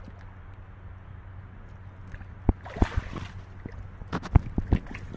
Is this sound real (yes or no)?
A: yes